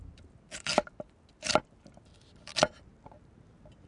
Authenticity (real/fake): real